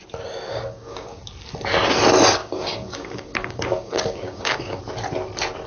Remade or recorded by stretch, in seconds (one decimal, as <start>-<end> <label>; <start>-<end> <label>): 0.0-0.5 recorded; 0.5-1.2 remade; 1.2-2.4 recorded; 2.4-4.8 remade; 4.8-5.7 recorded